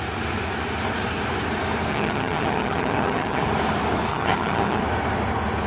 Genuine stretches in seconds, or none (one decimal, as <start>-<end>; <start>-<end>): 0.0-1.9; 3.4-4.1; 4.8-5.7